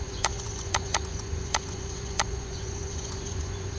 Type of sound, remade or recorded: remade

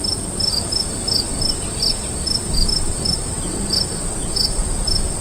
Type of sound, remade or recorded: recorded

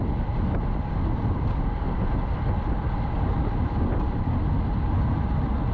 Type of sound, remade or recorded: recorded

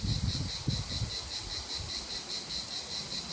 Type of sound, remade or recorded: recorded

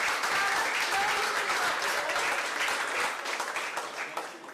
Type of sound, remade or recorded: recorded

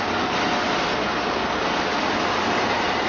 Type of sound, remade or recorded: recorded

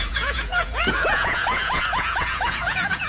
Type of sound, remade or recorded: remade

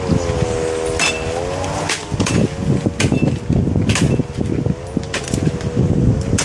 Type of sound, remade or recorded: recorded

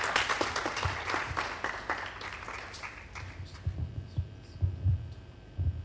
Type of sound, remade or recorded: recorded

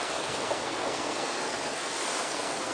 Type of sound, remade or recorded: remade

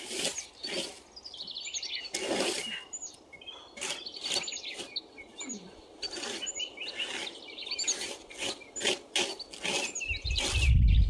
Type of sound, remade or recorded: recorded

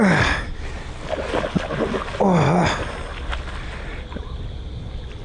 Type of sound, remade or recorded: recorded